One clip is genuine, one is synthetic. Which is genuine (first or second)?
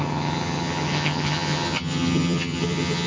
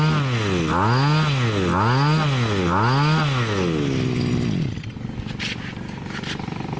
second